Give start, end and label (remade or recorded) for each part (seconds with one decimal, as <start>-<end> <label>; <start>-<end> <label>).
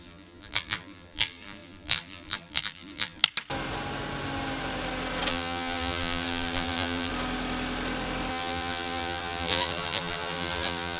0.0-3.2 remade; 3.2-5.3 recorded; 5.3-7.1 remade; 7.1-8.3 recorded; 8.3-11.0 remade